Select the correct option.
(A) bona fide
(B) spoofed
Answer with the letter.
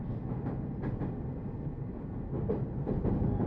A